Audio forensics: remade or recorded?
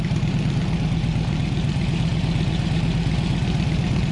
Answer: remade